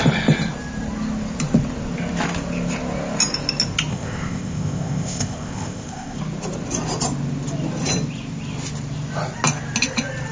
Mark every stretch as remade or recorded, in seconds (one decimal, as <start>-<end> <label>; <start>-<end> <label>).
0.0-3.9 recorded; 3.9-6.2 remade; 6.2-10.3 recorded